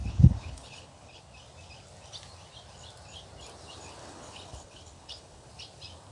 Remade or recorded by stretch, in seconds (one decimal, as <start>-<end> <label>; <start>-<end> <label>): 0.0-1.2 remade; 1.2-4.0 recorded; 4.0-5.5 remade; 5.5-6.1 recorded